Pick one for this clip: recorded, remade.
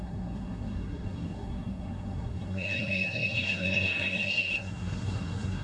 remade